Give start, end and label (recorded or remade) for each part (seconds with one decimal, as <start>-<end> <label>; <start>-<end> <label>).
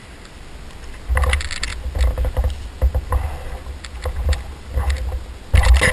0.0-5.9 recorded